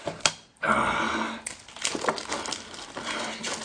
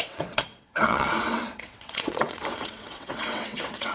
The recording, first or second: first